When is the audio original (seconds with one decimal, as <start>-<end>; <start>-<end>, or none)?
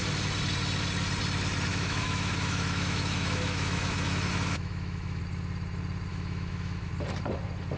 0.0-1.7; 5.2-6.1; 6.9-7.8